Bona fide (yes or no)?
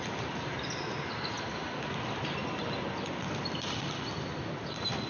yes